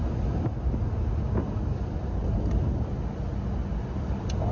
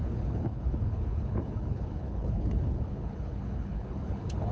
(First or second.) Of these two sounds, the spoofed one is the second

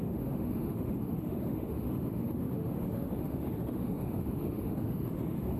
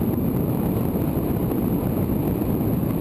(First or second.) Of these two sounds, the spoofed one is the first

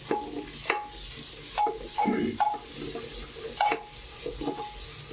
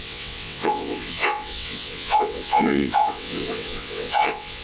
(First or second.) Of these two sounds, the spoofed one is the second